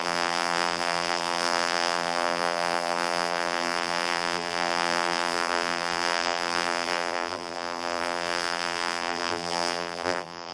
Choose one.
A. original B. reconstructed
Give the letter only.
B